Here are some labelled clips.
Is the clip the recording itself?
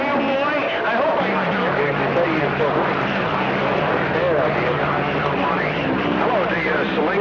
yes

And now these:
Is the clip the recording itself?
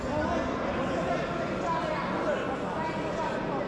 yes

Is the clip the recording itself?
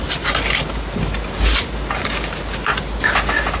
yes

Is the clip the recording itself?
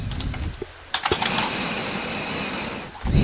yes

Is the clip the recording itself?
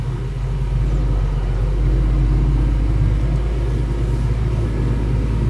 yes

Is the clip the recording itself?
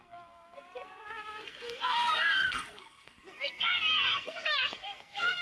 no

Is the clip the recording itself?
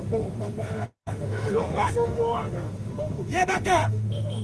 no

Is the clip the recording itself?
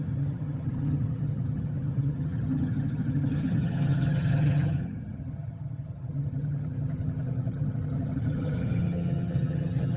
no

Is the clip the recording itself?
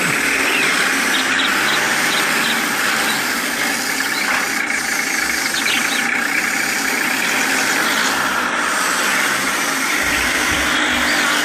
yes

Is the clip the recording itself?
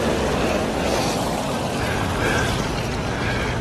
yes